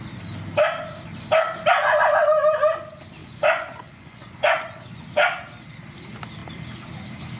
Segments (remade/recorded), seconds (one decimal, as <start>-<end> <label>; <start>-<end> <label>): 0.0-3.2 recorded; 3.2-5.0 remade; 5.0-7.4 recorded